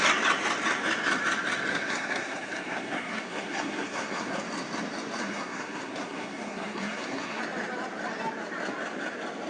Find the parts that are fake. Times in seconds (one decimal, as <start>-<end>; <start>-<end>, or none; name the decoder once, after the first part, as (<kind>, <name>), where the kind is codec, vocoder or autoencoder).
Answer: 1.7-4.4 (codec, SNAC); 5.2-7.4